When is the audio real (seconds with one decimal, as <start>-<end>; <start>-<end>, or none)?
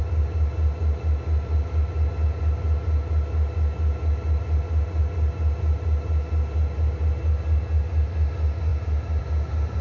0.0-9.8